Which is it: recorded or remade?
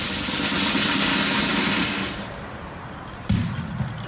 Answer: recorded